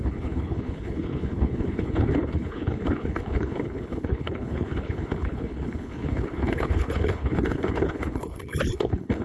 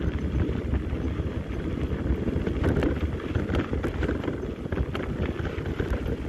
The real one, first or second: second